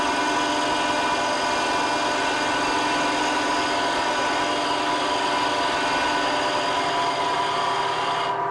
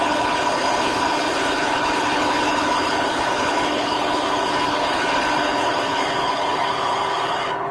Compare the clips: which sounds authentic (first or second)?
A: first